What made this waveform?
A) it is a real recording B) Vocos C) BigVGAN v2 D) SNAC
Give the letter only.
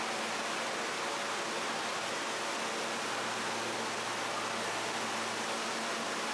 A